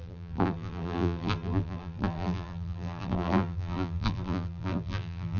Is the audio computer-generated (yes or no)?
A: yes